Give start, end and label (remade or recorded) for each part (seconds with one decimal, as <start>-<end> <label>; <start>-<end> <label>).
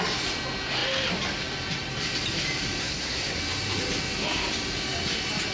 0.0-2.8 recorded; 2.8-3.4 remade; 3.4-5.5 recorded